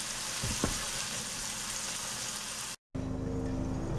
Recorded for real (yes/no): yes